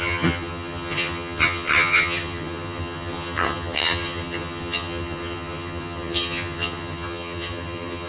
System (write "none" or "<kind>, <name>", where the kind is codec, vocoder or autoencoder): vocoder, HiFi-GAN